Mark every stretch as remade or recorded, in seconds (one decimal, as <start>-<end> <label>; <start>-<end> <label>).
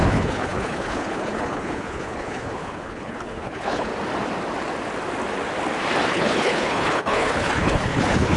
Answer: 0.0-3.9 remade; 3.9-6.1 recorded; 6.1-8.4 remade